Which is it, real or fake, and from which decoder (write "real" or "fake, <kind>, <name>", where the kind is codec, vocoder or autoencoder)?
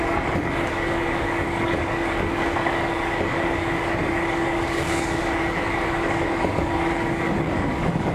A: fake, codec, DAC